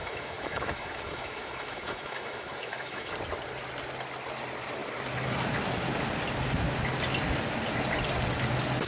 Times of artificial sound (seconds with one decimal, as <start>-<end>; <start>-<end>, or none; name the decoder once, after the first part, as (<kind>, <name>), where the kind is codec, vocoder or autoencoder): 0.0-3.1 (autoencoder, DAC-VAE)